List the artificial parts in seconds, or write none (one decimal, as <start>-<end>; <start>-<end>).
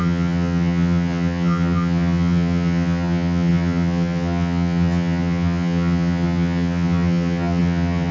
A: 0.0-8.1